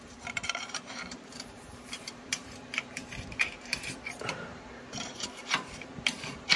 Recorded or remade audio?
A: remade